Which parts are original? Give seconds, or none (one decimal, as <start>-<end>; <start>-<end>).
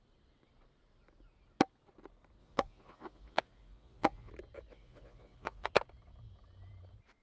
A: 0.0-2.4; 4.3-4.7; 5.7-7.2